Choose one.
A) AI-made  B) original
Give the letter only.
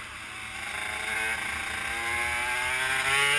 B